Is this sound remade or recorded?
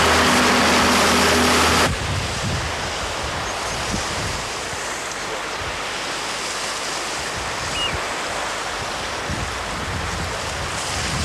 recorded